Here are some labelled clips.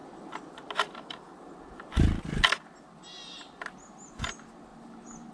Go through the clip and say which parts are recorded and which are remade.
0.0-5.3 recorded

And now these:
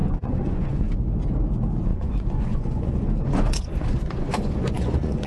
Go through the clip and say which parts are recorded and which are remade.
0.0-0.9 remade; 0.9-1.9 recorded; 1.9-5.3 remade

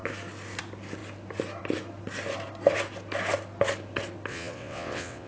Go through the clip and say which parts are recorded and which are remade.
0.0-4.3 recorded; 4.3-5.3 remade